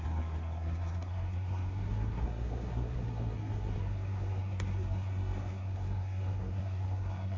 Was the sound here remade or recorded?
remade